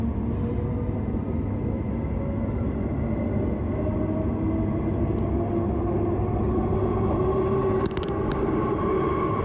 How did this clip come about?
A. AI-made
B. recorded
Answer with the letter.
B